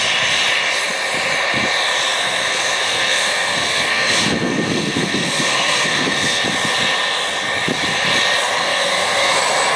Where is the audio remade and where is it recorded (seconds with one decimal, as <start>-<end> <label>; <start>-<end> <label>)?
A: 0.0-2.2 recorded; 2.2-6.4 remade; 6.4-8.6 recorded; 8.6-9.4 remade; 9.4-9.8 recorded